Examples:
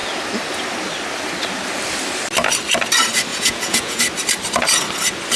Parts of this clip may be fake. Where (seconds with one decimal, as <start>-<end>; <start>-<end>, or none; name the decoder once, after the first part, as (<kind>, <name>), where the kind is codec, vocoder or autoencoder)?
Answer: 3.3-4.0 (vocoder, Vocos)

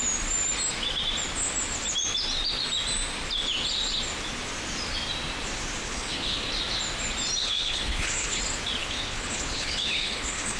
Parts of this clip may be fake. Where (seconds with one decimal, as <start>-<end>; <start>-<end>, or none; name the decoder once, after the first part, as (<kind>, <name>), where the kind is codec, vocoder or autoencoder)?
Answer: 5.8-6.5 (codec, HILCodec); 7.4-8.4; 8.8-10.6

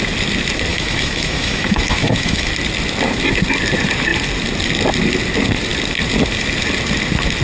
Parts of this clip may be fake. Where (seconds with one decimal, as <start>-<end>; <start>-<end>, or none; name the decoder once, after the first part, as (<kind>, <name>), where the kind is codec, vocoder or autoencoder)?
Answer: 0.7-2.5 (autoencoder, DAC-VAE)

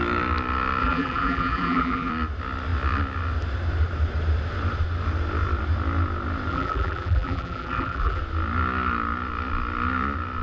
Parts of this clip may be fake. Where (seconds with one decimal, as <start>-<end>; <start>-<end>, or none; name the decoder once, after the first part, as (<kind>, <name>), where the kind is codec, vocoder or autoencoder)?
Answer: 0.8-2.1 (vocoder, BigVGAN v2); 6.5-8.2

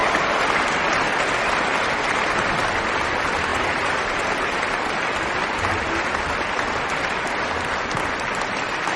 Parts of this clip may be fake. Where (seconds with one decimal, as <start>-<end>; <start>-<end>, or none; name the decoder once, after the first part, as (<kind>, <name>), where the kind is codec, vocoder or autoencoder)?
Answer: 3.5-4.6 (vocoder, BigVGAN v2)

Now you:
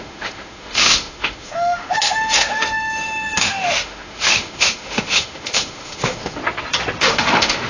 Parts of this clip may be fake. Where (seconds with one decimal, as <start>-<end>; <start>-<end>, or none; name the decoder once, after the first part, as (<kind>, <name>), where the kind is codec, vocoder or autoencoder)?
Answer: 0.0-6.4 (autoencoder, DAC-VAE); 7.0-7.7

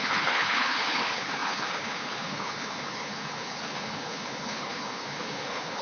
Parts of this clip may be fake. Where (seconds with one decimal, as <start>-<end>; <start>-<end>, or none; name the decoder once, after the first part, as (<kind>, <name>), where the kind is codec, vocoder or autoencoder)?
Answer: 0.0-5.8 (codec, HILCodec)